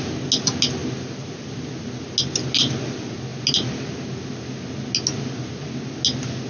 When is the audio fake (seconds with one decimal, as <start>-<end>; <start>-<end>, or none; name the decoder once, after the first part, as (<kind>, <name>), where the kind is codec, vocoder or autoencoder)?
none